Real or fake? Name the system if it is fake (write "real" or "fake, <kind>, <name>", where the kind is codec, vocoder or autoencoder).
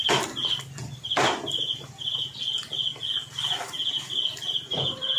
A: real